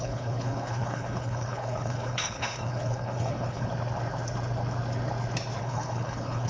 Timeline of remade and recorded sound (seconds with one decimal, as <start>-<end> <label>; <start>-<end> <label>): 0.0-3.7 remade; 3.7-5.6 recorded; 5.6-6.5 remade